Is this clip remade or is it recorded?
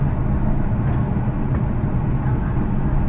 recorded